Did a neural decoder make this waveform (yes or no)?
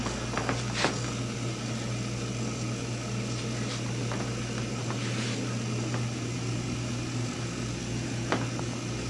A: no